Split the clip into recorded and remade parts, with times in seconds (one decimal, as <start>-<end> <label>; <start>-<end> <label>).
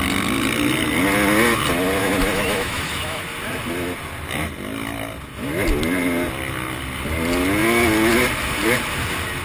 0.0-2.0 recorded; 2.0-3.2 remade; 3.2-9.4 recorded